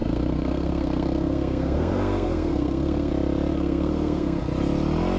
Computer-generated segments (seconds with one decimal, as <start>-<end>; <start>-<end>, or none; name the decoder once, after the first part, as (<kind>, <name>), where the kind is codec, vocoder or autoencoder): 0.0-3.1 (codec, SNAC); 3.5-4.4